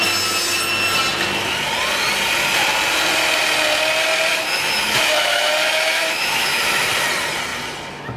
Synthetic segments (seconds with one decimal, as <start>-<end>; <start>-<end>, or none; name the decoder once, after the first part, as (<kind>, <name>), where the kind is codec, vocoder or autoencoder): 4.3-6.9 (autoencoder, DAC-VAE)